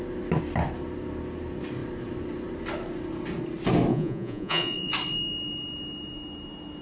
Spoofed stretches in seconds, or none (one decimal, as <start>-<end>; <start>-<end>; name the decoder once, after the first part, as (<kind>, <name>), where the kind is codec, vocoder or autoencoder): 3.9-4.9 (vocoder, Vocos)